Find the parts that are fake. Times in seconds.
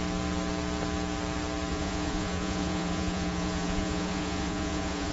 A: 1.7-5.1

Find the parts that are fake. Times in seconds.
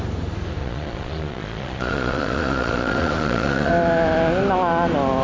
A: 0.6-3.7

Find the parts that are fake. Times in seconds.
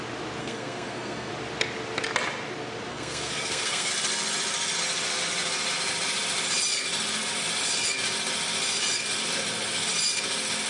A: 0.4-1.3; 2.9-3.9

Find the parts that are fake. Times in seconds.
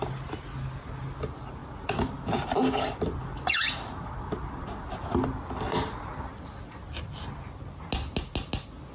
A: none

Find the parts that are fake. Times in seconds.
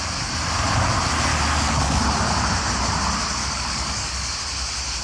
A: 1.3-2.0; 3.4-4.3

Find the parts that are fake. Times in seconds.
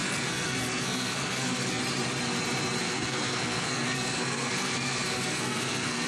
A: 0.0-1.8; 2.8-6.1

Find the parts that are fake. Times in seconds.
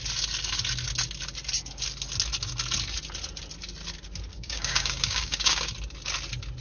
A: 4.3-5.7